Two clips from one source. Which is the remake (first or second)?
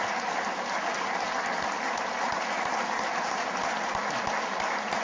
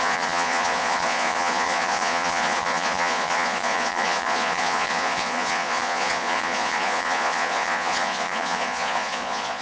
second